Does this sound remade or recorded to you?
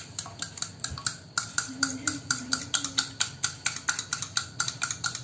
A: recorded